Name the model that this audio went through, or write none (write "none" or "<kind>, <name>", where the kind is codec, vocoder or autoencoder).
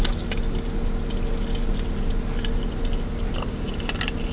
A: none